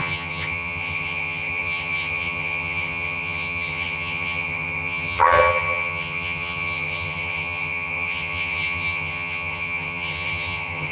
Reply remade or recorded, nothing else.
remade